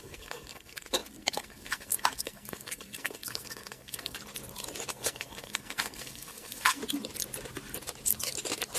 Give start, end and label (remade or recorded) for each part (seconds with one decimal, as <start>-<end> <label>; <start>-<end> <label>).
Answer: 0.0-4.2 remade; 4.2-4.9 recorded; 4.9-6.8 remade; 6.8-8.8 recorded